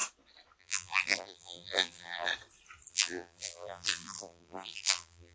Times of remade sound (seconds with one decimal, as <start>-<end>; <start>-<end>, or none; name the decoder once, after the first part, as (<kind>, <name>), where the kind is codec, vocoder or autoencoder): 0.6-2.3 (vocoder, BigVGAN v2); 2.9-5.3